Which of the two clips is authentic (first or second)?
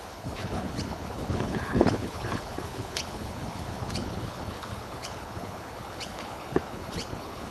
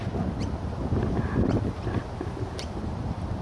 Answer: second